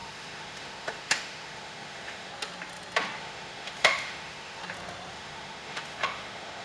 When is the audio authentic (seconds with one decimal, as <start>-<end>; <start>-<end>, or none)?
2.3-3.2; 4.6-5.1